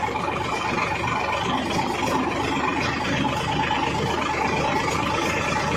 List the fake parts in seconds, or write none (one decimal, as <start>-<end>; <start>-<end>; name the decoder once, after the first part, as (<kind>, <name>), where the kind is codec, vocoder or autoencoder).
0.0-0.8 (vocoder, BigVGAN v2); 1.8-5.8